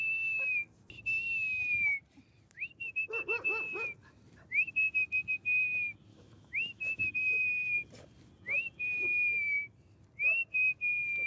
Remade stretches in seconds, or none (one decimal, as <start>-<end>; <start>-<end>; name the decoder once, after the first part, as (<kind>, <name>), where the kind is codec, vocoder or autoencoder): 6.1-7.1 (autoencoder, DAC-VAE)